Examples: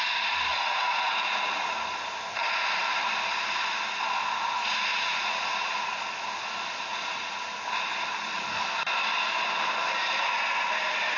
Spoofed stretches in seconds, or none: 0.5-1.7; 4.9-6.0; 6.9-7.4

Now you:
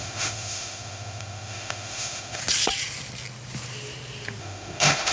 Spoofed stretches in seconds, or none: 0.0-2.4; 4.4-5.1